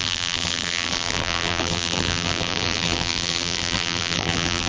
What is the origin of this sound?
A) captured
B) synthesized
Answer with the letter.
B